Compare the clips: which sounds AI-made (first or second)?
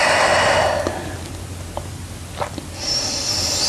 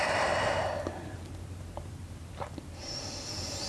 second